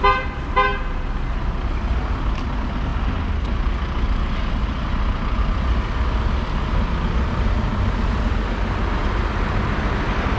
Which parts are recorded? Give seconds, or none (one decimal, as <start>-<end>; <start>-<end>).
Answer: 0.0-10.4